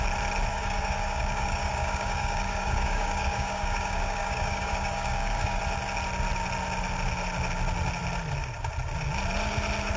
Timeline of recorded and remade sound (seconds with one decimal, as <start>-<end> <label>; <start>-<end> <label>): 0.0-0.5 recorded; 0.5-5.6 remade; 5.6-10.0 recorded